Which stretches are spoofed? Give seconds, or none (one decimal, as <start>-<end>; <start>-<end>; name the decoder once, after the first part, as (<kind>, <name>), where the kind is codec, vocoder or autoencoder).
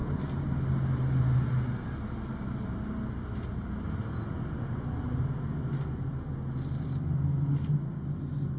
none